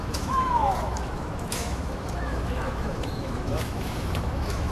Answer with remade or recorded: remade